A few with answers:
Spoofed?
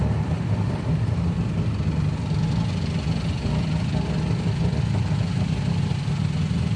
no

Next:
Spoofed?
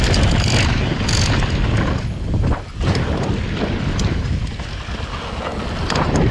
no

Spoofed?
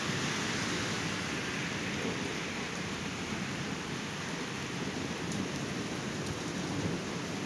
no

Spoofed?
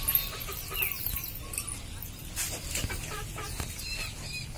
no